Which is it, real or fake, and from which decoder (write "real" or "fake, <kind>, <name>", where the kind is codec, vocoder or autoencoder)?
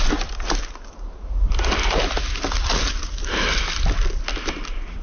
fake, vocoder, BigVGAN v2